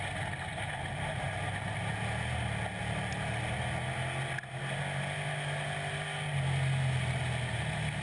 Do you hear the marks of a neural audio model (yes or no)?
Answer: no